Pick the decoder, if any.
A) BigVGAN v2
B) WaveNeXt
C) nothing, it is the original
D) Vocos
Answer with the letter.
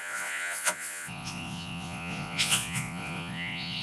D